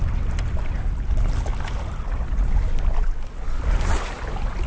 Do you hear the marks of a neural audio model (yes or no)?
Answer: no